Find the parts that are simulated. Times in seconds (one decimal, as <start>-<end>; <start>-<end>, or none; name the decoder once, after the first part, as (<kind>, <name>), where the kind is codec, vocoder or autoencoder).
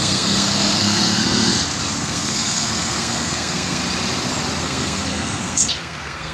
0.0-1.5 (codec, SNAC); 2.0-3.8; 4.6-6.3